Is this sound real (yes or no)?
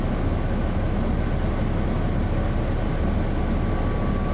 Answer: yes